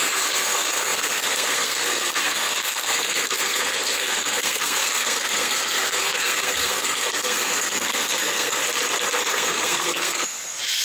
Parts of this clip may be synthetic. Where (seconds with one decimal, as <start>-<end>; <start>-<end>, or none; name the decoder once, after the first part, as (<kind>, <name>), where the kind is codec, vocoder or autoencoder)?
0.0-8.6 (codec, SNAC); 9.2-10.8